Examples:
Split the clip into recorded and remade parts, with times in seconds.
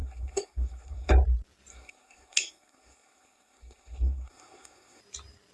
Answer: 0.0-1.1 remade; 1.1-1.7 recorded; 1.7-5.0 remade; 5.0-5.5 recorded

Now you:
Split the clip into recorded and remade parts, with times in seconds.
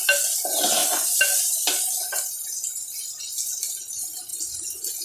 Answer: 0.0-5.0 recorded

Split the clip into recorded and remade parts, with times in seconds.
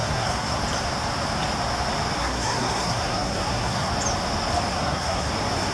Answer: 0.0-0.6 remade; 0.6-2.2 recorded; 2.2-3.9 remade; 3.9-4.7 recorded; 4.7-5.3 remade; 5.3-5.7 recorded